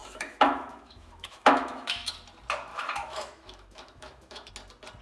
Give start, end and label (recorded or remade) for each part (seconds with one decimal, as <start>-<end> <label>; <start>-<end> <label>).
0.0-2.1 remade; 2.1-2.7 recorded; 2.7-4.5 remade; 4.5-5.0 recorded